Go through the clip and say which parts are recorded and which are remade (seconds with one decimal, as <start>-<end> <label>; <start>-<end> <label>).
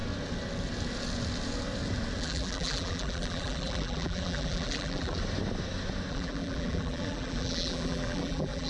0.0-2.2 recorded; 2.2-5.2 remade; 5.2-6.1 recorded; 6.1-8.7 remade